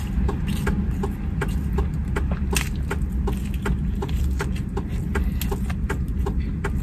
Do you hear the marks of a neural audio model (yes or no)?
no